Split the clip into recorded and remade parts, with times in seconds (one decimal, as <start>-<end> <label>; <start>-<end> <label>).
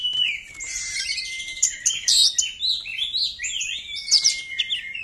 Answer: 0.0-2.1 remade; 2.1-2.9 recorded; 2.9-4.4 remade; 4.4-5.0 recorded